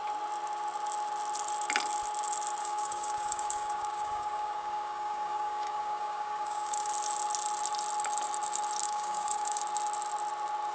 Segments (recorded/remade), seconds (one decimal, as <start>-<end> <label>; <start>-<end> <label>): 0.0-2.6 recorded; 2.6-6.9 remade; 6.9-8.8 recorded; 8.8-9.6 remade; 9.6-10.7 recorded